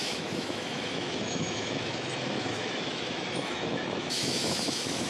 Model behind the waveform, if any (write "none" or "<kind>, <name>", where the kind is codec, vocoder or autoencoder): autoencoder, DAC-VAE